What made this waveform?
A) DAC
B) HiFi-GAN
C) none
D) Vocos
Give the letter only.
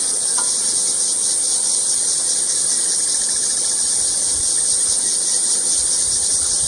C